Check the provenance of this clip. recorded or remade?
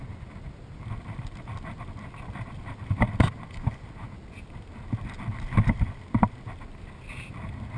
recorded